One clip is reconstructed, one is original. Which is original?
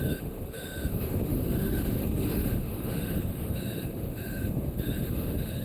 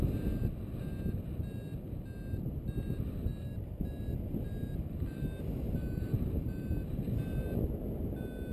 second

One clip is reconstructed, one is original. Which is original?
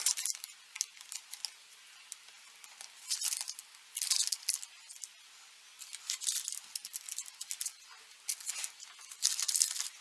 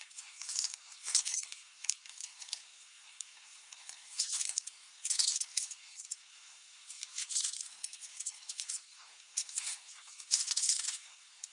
first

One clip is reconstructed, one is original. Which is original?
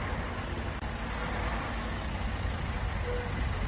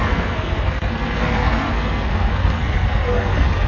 first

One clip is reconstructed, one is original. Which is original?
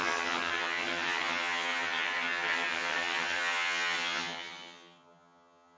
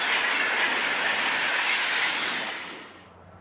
second